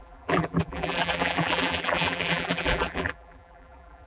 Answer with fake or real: fake